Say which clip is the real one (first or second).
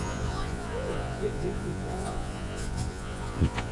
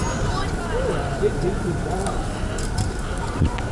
second